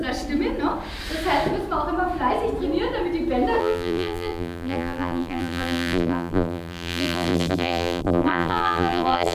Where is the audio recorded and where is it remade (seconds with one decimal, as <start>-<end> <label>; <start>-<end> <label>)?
0.0-3.6 recorded; 3.6-9.3 remade